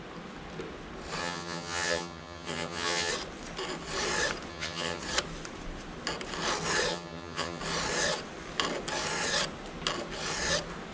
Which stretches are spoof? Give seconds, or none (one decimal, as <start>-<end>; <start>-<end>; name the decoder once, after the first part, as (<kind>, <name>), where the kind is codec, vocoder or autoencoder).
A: 1.2-3.1 (vocoder, HiFi-GAN); 4.5-5.0; 6.9-7.6